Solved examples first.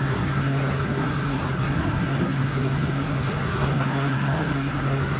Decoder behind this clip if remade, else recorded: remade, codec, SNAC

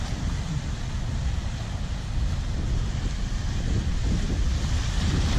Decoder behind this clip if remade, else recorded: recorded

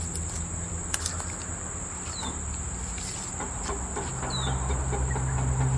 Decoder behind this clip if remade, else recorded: recorded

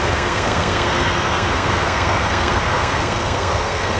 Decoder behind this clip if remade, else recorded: remade, codec, SNAC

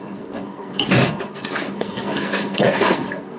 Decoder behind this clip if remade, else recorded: remade, codec, SNAC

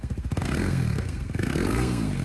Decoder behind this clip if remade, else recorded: remade, codec, SNAC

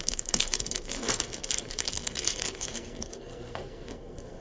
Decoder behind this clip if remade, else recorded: remade, codec, SNAC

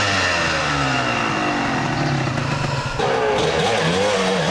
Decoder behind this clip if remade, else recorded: recorded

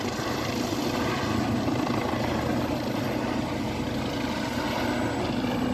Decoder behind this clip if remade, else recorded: recorded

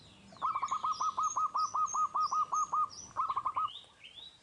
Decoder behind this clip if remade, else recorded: recorded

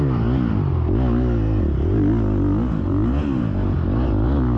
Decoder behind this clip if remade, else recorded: recorded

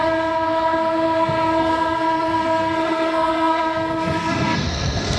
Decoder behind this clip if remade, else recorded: remade, codec, SNAC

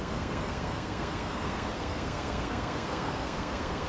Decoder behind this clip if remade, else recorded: remade, codec, SNAC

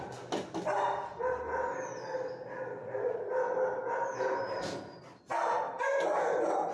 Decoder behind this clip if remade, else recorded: recorded